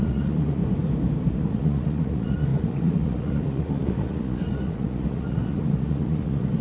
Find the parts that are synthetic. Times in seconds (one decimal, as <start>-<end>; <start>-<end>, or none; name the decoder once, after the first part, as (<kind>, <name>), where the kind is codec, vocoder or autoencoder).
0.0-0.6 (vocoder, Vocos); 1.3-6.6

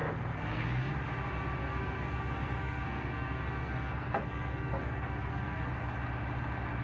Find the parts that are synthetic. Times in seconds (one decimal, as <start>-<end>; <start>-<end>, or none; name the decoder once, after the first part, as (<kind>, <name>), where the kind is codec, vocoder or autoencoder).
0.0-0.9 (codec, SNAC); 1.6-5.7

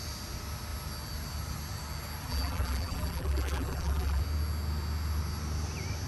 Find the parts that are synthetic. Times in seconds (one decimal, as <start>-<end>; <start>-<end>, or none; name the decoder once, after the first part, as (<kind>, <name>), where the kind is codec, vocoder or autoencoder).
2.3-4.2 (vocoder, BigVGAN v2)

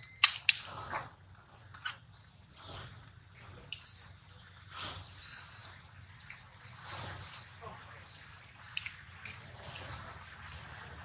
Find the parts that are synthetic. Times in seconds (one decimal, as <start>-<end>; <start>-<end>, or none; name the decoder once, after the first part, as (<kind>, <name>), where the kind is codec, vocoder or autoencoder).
none

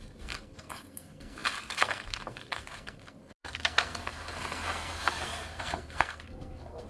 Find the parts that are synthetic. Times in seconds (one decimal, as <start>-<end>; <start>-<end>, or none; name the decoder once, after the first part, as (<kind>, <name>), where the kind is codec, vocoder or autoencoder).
0.0-6.9 (codec, SNAC)

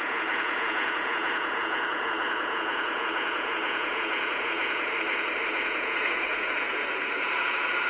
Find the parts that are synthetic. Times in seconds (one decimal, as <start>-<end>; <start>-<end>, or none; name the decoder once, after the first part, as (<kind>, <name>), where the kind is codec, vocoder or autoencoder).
0.0-4.9 (vocoder, Vocos); 5.5-7.9

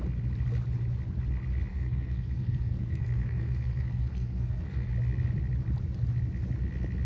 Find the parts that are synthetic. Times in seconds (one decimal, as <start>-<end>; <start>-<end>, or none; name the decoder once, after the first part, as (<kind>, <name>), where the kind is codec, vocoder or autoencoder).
1.7-4.9 (codec, SNAC)

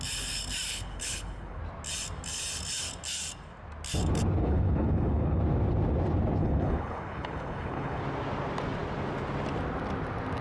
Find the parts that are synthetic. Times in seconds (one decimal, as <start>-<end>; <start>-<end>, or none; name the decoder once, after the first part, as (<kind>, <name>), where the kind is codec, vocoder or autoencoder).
0.7-1.6 (codec, HILCodec); 4.4-5.4; 6.4-8.0